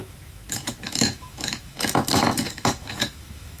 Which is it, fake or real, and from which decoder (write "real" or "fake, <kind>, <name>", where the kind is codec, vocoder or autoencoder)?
fake, autoencoder, DAC-VAE